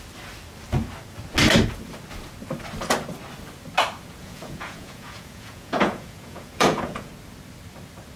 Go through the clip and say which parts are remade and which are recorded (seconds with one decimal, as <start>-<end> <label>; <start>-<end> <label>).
0.0-4.2 recorded; 4.2-7.1 remade; 7.1-8.2 recorded